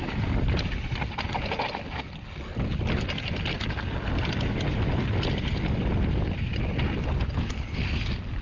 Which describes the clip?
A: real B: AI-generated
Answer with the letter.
A